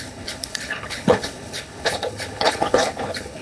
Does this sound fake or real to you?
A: fake